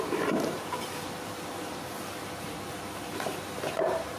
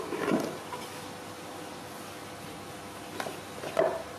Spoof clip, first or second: first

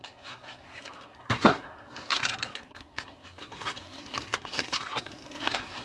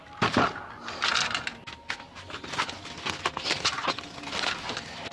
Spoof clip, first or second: first